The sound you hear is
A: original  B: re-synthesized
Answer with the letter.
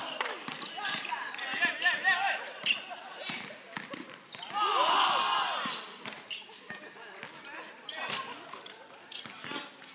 A